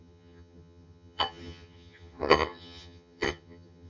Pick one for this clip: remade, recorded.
remade